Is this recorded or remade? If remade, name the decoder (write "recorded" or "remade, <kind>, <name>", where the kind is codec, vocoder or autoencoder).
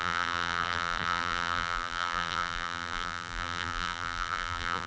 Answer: remade, vocoder, BigVGAN v2